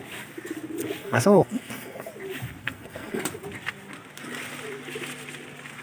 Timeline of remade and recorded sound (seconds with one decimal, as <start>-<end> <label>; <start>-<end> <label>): 0.0-1.0 recorded; 1.0-2.1 remade; 2.1-2.6 recorded; 2.6-3.2 remade; 3.2-5.8 recorded